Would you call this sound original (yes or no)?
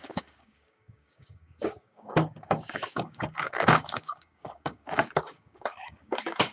no